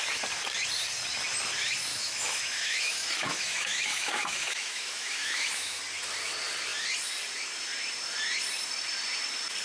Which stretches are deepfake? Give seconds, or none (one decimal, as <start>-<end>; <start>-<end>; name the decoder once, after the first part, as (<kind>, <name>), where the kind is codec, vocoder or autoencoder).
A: 1.9-5.8 (autoencoder, DAC-VAE)